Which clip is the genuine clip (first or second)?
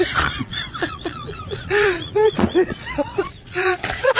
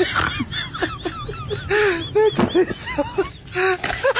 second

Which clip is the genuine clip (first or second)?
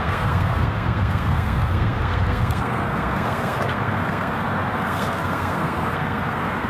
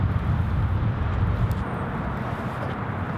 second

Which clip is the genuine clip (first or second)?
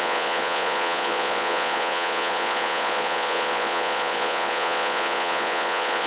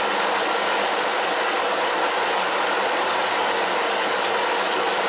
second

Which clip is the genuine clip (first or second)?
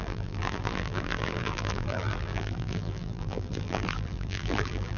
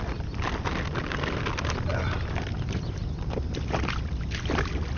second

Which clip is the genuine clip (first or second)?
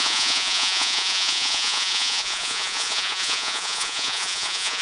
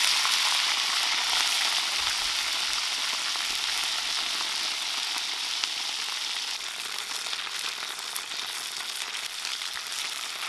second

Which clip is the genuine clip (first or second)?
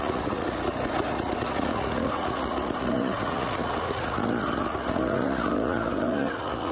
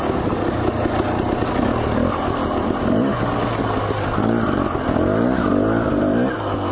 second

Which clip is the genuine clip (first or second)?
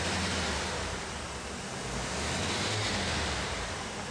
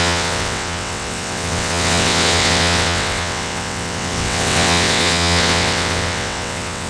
first